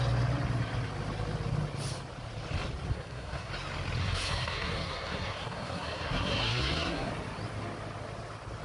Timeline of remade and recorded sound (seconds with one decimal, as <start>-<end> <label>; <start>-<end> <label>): 0.0-2.9 recorded; 2.9-3.5 remade; 3.5-4.0 recorded; 4.0-7.1 remade; 7.1-8.6 recorded